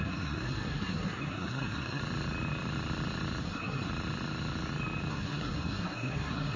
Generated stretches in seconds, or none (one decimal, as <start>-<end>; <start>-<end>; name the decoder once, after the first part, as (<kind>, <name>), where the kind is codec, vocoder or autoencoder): 0.0-2.0 (codec, SNAC); 3.4-3.9; 5.1-6.6